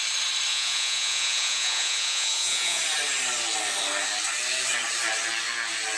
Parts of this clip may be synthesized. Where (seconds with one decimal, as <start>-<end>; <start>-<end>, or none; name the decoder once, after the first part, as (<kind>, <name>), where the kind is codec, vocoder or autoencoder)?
0.5-2.8 (vocoder, Vocos)